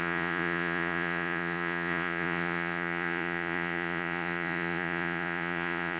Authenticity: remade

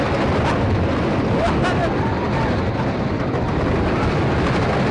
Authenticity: recorded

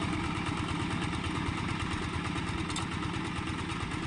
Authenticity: recorded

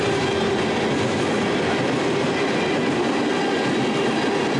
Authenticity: recorded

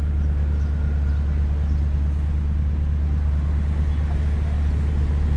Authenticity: recorded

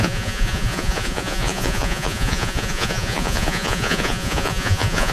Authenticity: remade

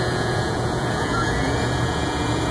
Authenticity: remade